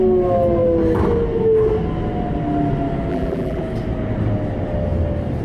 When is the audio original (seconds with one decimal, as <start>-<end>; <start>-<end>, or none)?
0.0-3.1; 3.6-5.4